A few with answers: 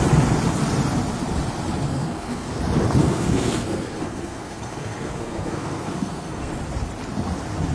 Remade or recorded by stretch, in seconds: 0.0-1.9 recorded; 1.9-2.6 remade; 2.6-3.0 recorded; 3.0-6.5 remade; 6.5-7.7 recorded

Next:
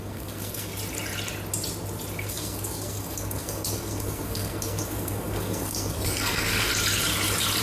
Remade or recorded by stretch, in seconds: 0.0-0.7 remade; 0.7-2.2 recorded; 2.2-6.7 remade; 6.7-7.6 recorded

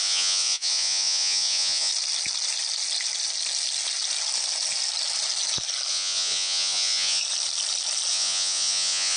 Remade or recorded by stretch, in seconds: 0.0-1.9 remade; 1.9-5.9 recorded; 5.9-7.2 remade; 7.2-8.1 recorded; 8.1-9.2 remade

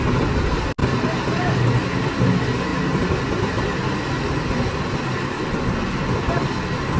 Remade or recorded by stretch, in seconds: 0.0-7.0 recorded

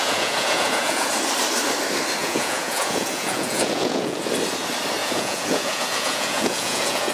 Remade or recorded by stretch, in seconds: 0.0-1.1 remade; 1.1-2.2 recorded; 2.2-4.2 remade; 4.2-5.0 recorded; 5.0-7.1 remade

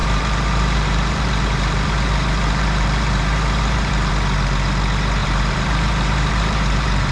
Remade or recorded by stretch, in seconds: 0.0-4.1 remade; 4.1-5.2 recorded; 5.2-7.1 remade